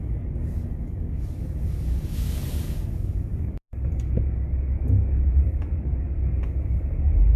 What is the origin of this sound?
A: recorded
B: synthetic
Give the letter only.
B